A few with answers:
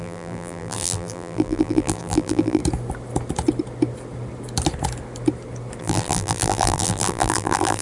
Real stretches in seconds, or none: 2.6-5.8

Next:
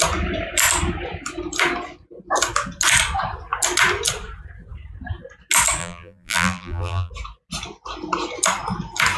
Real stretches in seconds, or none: 0.0-5.8; 7.1-9.2